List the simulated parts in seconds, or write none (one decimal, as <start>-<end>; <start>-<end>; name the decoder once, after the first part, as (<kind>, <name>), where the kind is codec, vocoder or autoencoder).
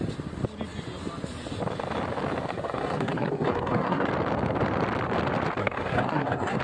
2.5-4.1 (codec, SNAC); 5.6-6.6